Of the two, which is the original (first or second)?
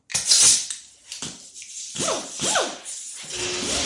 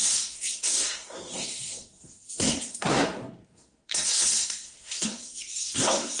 first